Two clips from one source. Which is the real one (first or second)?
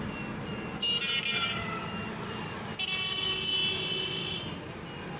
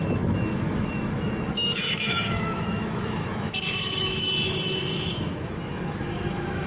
first